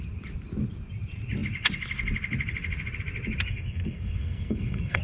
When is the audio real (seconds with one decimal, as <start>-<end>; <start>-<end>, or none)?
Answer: 0.0-3.5